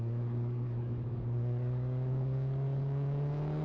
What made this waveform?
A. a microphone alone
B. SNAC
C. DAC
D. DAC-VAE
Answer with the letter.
C